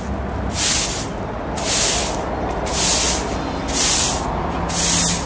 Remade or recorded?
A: recorded